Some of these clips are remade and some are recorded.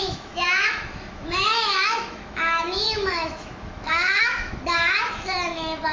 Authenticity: remade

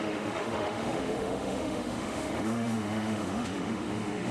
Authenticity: remade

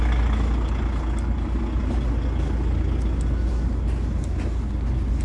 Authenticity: recorded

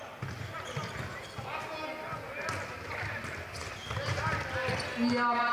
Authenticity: recorded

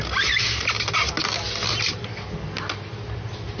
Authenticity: recorded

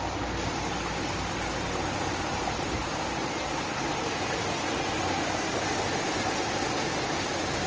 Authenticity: recorded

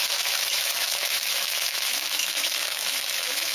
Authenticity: remade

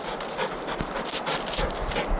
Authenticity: recorded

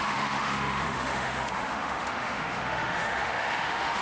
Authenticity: remade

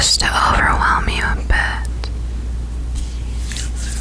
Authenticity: recorded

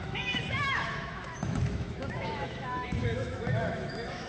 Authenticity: remade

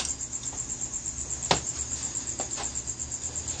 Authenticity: recorded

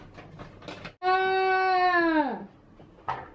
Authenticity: recorded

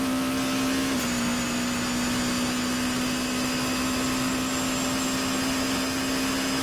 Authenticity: recorded